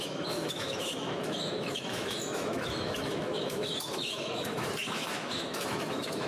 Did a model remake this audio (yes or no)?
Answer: yes